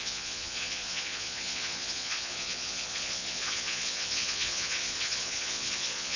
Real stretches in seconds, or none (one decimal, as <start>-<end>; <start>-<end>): none